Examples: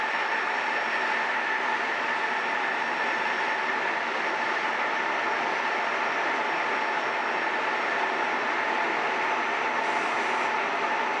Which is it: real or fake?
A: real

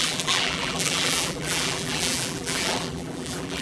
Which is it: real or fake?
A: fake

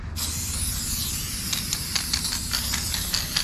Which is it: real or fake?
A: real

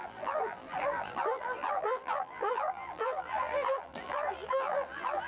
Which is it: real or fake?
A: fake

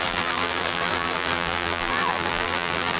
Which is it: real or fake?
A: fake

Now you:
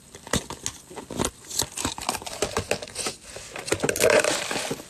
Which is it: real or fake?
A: real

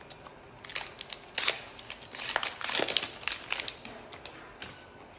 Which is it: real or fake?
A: real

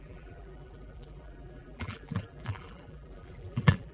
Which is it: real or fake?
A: fake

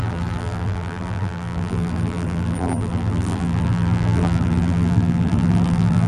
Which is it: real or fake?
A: fake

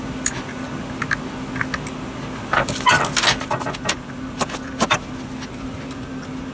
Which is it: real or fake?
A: real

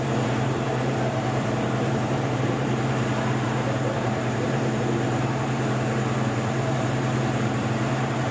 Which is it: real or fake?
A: fake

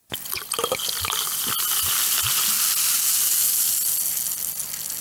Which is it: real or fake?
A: real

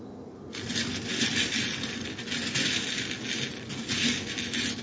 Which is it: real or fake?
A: real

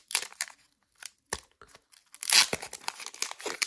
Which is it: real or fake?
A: real